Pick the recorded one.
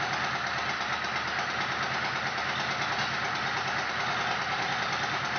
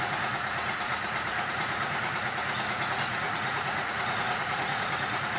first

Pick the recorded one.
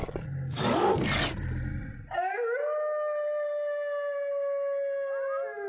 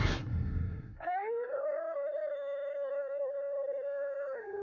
first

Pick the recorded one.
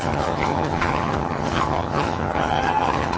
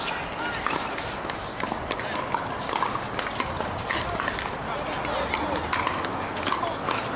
second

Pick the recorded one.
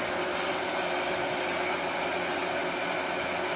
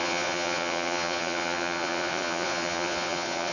first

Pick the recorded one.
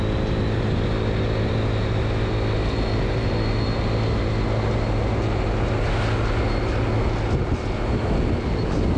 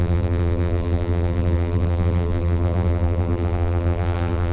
first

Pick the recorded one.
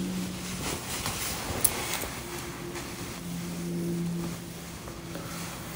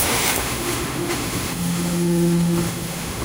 first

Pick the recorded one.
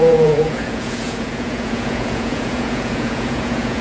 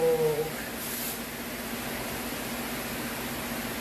second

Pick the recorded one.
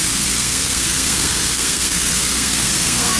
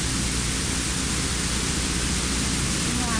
second